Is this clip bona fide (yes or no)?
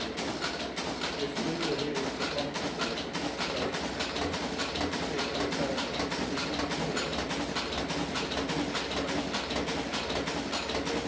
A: yes